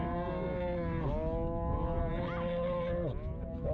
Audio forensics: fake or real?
real